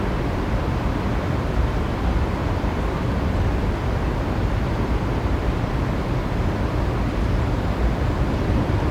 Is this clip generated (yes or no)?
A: yes